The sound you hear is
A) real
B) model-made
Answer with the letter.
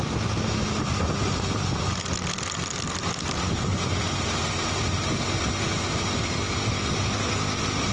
A